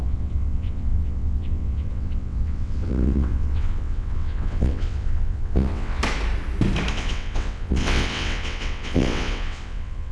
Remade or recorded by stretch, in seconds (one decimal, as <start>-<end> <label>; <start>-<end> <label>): 0.0-6.0 remade; 6.0-6.9 recorded; 6.9-10.1 remade